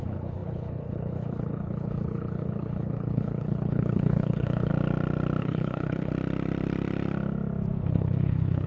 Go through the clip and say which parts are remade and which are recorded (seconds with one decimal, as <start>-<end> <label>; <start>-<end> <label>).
0.0-4.7 remade; 4.7-5.4 recorded; 5.4-6.1 remade; 6.1-7.9 recorded; 7.9-8.7 remade